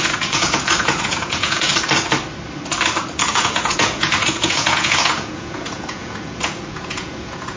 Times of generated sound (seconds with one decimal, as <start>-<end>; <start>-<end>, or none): 0.0-1.7; 3.3-7.6